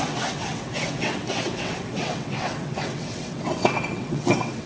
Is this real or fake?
fake